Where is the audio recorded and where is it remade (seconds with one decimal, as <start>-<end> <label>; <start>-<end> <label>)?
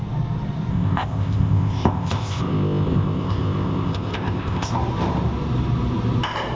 0.0-0.7 recorded; 0.7-4.7 remade; 4.7-6.6 recorded